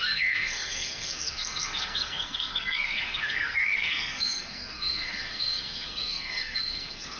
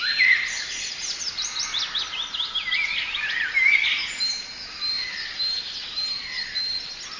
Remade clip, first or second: first